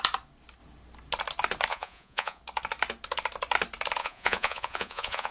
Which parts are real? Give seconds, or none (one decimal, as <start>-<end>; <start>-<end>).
0.0-1.7; 2.4-4.0

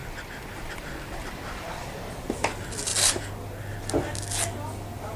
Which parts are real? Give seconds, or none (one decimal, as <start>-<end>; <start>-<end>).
0.0-5.2

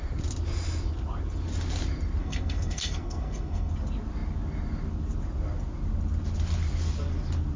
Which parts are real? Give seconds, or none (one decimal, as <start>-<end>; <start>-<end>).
0.0-2.2; 3.7-7.6

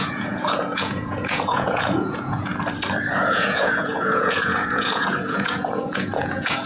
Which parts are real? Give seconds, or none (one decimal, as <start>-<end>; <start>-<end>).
2.5-3.2